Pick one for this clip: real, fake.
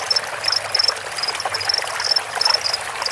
real